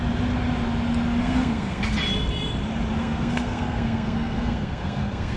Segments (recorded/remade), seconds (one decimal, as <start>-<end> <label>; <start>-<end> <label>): 0.0-1.2 recorded; 1.2-1.8 remade; 1.8-3.0 recorded; 3.0-5.4 remade